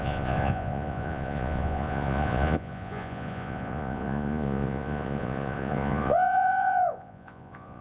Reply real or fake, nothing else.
fake